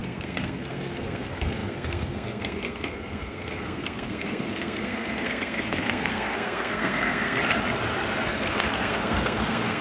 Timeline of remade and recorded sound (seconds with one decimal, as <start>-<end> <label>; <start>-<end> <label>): 0.0-7.4 remade; 7.4-8.3 recorded; 8.3-9.8 remade